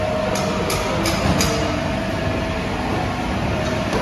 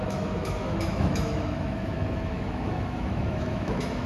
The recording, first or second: first